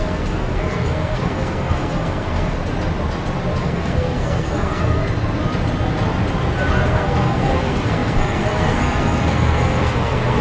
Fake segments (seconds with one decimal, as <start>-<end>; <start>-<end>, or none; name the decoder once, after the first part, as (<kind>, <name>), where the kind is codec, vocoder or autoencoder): 0.0-2.6 (codec, SNAC); 3.6-5.0; 6.7-10.4